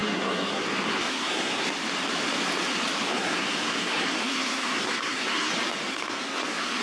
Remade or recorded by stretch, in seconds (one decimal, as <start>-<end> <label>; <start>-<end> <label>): 0.0-0.6 remade; 0.6-1.1 recorded; 1.1-1.7 remade; 1.7-3.1 recorded; 3.1-5.5 remade; 5.5-5.9 recorded; 5.9-6.8 remade